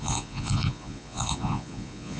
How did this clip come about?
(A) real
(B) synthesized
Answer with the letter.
B